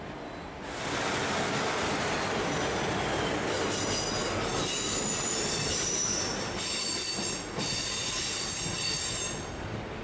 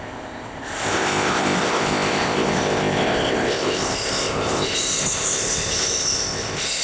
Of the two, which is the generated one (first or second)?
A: second